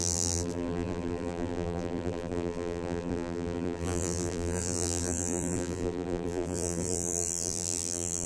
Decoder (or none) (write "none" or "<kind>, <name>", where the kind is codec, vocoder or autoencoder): vocoder, BigVGAN v2